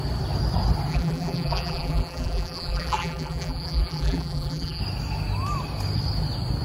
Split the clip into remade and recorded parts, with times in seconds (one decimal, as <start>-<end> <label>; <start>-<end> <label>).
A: 0.0-0.9 recorded; 0.9-4.8 remade; 4.8-6.6 recorded